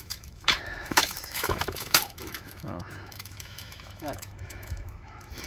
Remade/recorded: remade